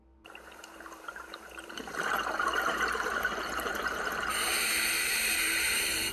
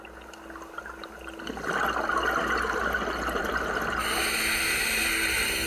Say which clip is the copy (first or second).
first